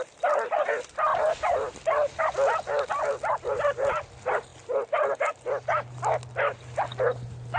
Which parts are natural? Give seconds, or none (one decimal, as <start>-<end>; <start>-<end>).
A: 0.0-7.6